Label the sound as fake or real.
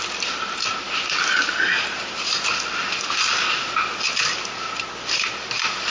real